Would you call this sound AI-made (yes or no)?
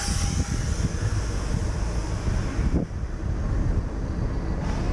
no